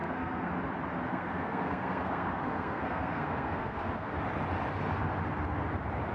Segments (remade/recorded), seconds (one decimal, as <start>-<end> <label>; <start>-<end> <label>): 0.0-0.5 remade; 0.5-1.1 recorded; 1.1-4.1 remade; 4.1-6.1 recorded